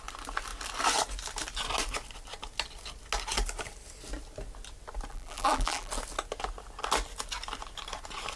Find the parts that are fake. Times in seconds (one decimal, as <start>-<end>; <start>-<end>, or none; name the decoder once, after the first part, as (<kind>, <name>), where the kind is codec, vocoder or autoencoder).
5.1-5.9 (vocoder, BigVGAN v2)